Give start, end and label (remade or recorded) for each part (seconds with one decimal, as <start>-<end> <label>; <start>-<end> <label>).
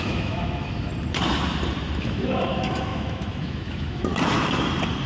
0.0-0.9 remade; 0.9-2.0 recorded; 2.0-4.1 remade; 4.1-5.1 recorded